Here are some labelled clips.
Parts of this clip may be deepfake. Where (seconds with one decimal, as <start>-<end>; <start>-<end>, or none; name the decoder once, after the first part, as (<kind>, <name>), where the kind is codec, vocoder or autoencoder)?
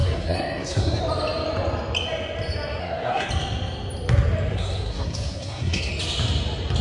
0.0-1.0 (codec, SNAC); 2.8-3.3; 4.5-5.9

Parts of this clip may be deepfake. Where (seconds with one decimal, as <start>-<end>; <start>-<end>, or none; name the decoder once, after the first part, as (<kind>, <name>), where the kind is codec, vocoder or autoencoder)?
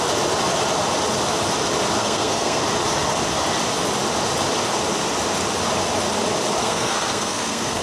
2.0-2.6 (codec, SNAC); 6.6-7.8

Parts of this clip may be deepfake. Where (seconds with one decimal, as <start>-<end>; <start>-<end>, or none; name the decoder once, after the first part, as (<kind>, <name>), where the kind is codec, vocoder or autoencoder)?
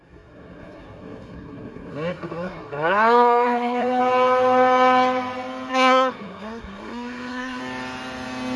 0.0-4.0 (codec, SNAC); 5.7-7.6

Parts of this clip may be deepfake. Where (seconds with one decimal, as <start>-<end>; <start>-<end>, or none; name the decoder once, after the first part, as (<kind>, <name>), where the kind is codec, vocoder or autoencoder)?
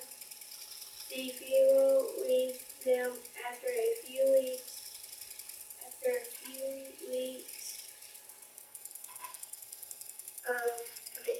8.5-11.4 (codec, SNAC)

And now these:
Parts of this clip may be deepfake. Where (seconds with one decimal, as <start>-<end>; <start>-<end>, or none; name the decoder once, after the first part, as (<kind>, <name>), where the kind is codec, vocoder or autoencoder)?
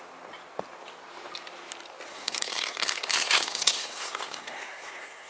2.1-5.3 (codec, SNAC)